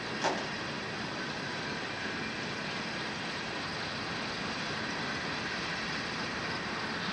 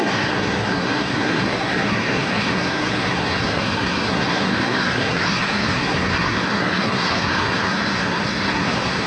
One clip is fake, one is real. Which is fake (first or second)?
second